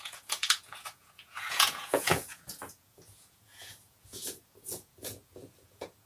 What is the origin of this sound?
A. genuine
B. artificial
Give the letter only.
B